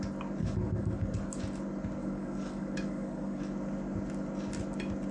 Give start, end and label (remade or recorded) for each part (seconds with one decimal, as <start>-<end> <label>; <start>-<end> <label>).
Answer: 0.0-0.4 recorded; 0.4-1.4 remade; 1.4-2.0 recorded; 2.0-3.4 remade; 3.4-5.1 recorded